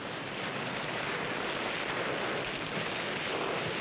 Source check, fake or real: real